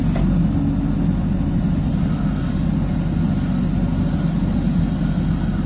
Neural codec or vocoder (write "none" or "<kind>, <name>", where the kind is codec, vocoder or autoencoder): none